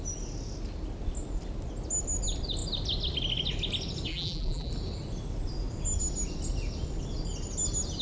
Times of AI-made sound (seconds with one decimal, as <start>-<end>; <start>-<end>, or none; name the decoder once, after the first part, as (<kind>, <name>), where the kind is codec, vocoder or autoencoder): 4.1-4.7 (vocoder, BigVGAN v2)